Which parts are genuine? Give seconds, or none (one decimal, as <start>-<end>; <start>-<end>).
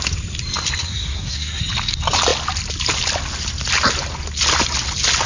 0.0-0.8; 1.6-5.3